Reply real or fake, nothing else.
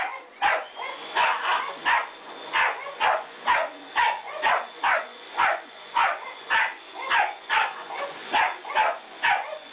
fake